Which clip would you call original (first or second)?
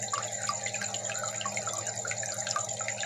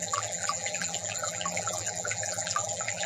first